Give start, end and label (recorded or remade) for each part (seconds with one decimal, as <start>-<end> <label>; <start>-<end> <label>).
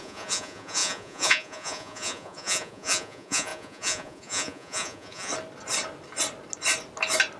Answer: 0.0-5.3 remade; 5.3-7.4 recorded